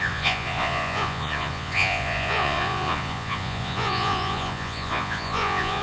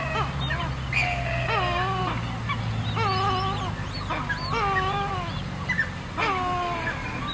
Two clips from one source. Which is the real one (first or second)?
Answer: second